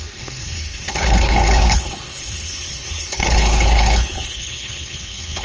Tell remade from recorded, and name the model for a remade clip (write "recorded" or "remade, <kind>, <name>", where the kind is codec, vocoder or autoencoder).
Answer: remade, codec, HILCodec